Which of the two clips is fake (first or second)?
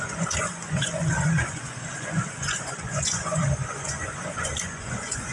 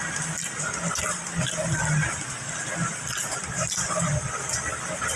first